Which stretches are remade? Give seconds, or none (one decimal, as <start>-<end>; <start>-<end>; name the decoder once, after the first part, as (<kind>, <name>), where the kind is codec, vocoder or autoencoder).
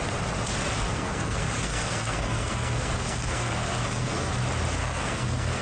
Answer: 0.9-4.3 (codec, SNAC); 4.8-5.6